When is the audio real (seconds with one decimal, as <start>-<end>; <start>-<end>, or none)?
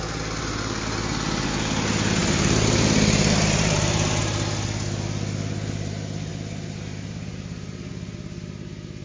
0.0-2.2; 4.2-9.0